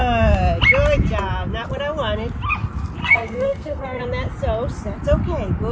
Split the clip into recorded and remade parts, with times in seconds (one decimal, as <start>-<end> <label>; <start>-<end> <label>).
0.0-3.0 recorded; 3.0-4.0 remade; 4.0-5.7 recorded